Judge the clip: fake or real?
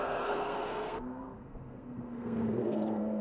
fake